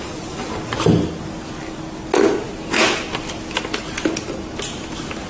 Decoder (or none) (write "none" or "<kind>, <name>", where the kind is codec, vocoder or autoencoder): none